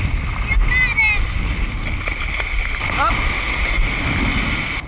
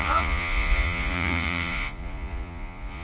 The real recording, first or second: first